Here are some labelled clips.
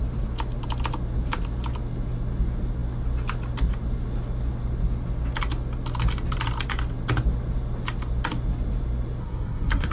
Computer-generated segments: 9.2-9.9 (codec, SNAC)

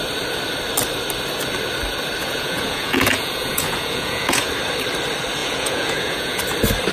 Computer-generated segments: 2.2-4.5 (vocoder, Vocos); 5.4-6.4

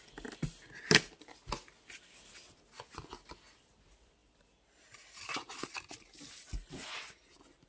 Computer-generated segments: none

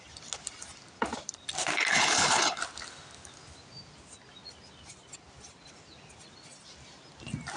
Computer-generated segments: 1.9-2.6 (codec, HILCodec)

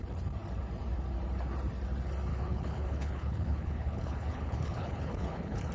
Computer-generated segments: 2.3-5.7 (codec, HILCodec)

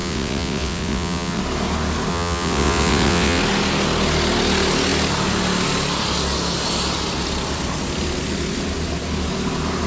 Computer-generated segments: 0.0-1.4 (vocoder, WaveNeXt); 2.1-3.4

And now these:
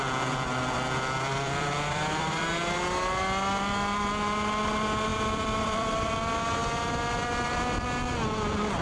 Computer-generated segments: 1.3-2.5 (vocoder, BigVGAN v2); 5.1-6.1